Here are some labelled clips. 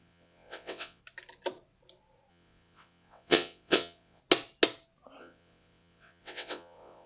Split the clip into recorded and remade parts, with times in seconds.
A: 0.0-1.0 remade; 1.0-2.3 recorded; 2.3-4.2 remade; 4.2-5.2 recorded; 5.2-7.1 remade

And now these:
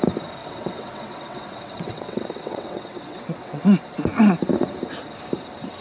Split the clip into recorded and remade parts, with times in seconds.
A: 0.0-0.4 recorded; 0.4-3.6 remade; 3.6-5.8 recorded

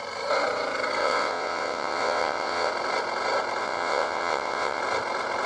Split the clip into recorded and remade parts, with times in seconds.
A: 0.0-1.0 recorded; 1.0-2.7 remade; 2.7-3.6 recorded; 3.6-4.8 remade; 4.8-5.5 recorded